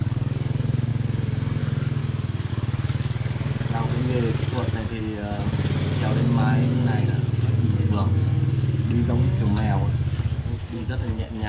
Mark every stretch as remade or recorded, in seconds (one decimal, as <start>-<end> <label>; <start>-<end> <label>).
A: 0.0-0.9 remade; 0.9-1.6 recorded; 1.6-2.0 remade; 2.0-2.5 recorded; 2.5-3.9 remade; 3.9-4.4 recorded; 4.4-5.0 remade; 5.0-6.4 recorded; 6.4-11.5 remade